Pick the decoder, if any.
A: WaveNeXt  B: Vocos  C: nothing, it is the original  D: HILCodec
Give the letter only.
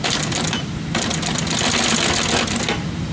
C